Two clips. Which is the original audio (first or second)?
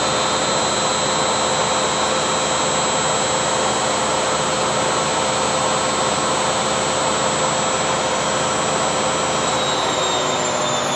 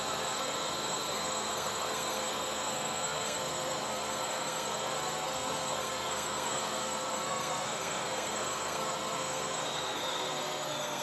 first